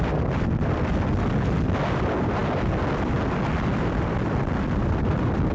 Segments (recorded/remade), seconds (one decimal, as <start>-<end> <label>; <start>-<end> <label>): 0.0-5.5 recorded

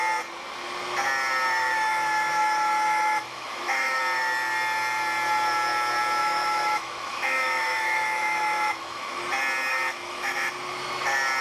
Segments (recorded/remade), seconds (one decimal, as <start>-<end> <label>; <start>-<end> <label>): 0.0-1.6 recorded; 1.6-4.0 remade; 4.0-6.2 recorded; 6.2-9.2 remade; 9.2-9.7 recorded; 9.7-10.5 remade; 10.5-11.4 recorded

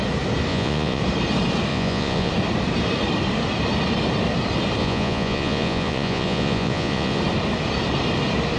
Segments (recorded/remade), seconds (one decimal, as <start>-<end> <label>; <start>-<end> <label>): 0.0-0.5 recorded; 0.5-1.0 remade; 1.0-1.7 recorded; 1.7-2.3 remade; 2.3-4.8 recorded; 4.8-7.2 remade; 7.2-8.6 recorded

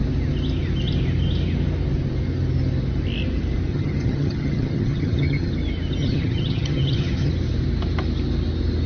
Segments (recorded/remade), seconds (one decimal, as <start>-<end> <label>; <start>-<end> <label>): 0.0-3.7 recorded; 3.7-5.5 remade; 5.5-6.0 recorded; 6.0-7.3 remade; 7.3-8.9 recorded